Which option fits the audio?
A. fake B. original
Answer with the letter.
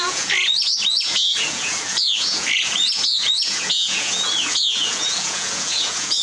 A